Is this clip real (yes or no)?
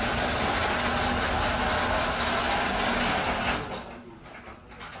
yes